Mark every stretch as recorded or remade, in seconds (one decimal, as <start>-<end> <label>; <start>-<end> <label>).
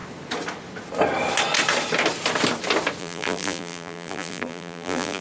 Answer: 0.0-3.0 recorded; 3.0-5.2 remade